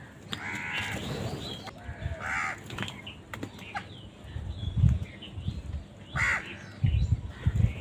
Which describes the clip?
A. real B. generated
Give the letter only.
A